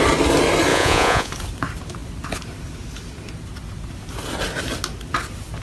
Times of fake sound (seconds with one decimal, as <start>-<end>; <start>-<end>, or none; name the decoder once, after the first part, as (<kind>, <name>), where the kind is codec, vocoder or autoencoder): 0.7-1.3 (vocoder, Vocos)